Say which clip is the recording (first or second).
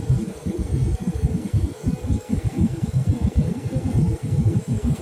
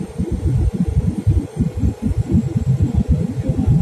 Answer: second